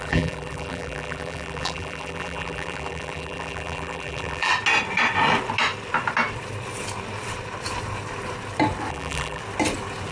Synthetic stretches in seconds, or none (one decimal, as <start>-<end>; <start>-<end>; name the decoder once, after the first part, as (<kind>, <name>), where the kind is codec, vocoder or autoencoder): 0.0-4.5 (vocoder, BigVGAN v2); 8.9-9.4